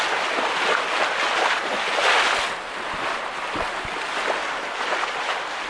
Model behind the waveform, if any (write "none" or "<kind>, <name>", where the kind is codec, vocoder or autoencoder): none